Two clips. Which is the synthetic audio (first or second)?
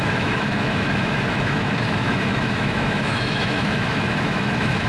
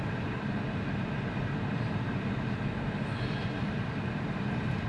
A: first